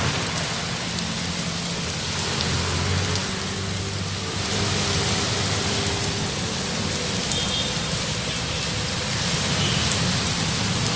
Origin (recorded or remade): recorded